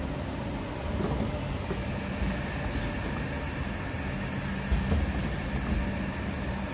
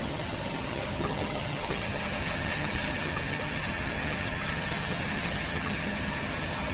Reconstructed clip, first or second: second